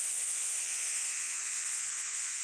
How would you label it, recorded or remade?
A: remade